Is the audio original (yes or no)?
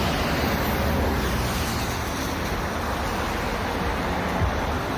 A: yes